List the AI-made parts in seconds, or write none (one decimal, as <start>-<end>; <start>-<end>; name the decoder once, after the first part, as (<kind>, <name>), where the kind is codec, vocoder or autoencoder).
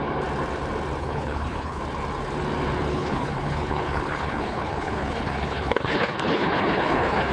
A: 1.0-1.8 (codec, HILCodec); 2.9-7.3